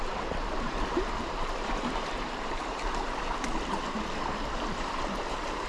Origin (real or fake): fake